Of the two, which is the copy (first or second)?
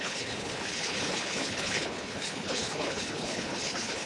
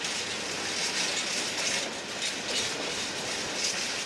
first